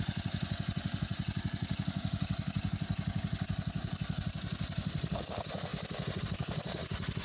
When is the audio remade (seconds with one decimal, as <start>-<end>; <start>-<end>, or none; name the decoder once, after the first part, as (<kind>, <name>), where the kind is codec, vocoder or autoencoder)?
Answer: none